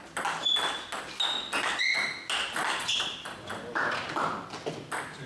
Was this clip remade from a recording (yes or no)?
no